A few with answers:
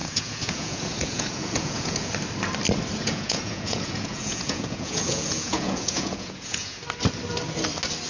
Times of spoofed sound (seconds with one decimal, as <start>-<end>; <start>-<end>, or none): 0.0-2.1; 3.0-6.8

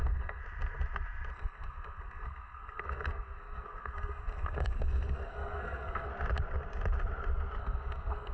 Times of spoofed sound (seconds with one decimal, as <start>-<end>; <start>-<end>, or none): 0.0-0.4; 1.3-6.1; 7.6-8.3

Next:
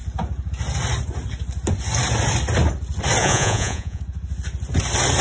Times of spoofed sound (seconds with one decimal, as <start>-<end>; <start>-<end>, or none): 3.2-4.0

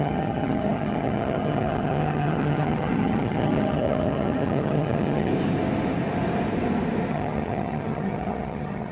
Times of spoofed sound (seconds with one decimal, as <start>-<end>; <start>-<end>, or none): 0.0-5.3; 7.1-8.9